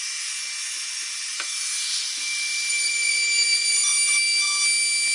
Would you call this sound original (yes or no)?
yes